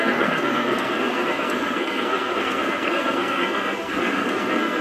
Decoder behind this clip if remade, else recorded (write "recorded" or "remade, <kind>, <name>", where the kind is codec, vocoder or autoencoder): remade, codec, SNAC